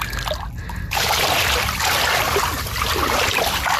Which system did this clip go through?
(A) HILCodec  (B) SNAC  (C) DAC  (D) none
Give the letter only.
D